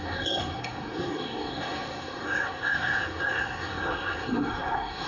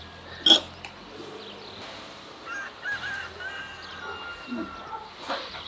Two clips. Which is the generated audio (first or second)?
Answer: first